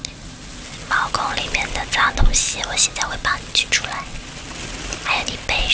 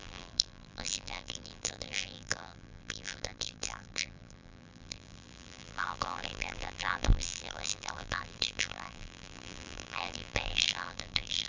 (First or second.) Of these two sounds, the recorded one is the first